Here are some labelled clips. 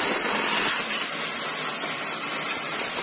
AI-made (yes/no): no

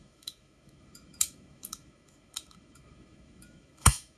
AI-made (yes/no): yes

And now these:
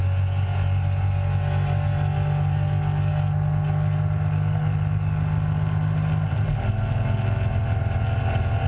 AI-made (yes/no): no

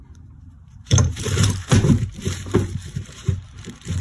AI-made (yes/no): yes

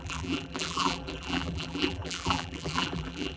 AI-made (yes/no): yes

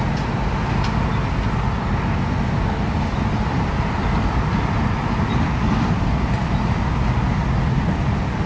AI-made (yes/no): no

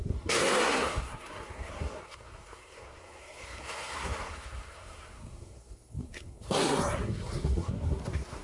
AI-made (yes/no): yes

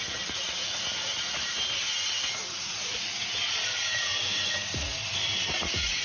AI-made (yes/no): yes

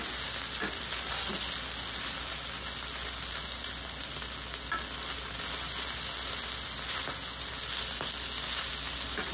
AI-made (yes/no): no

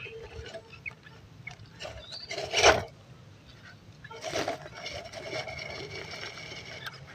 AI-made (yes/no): no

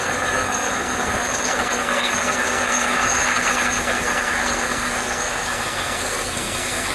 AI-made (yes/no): yes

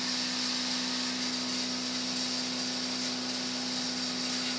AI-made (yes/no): no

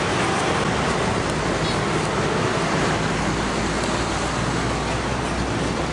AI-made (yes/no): no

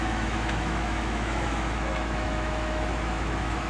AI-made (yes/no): yes